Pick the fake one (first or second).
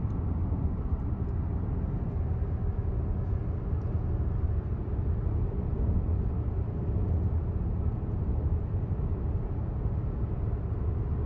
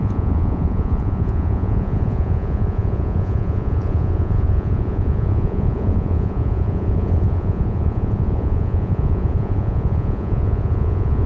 second